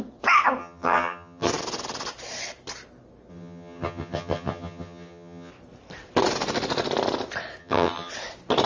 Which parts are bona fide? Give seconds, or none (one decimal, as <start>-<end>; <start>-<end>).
0.0-0.6; 1.5-3.3; 5.5-7.6; 8.1-8.7